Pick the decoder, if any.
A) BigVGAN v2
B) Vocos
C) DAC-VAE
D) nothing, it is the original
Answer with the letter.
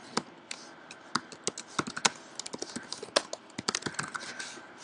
D